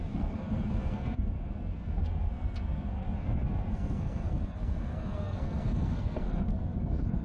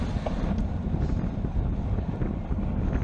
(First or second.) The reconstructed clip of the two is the first